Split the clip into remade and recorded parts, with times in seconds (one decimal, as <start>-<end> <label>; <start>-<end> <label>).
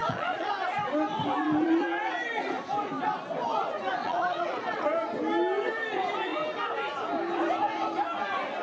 0.0-0.5 remade; 0.5-1.4 recorded; 1.4-2.1 remade; 2.1-4.0 recorded; 4.0-4.8 remade; 4.8-8.6 recorded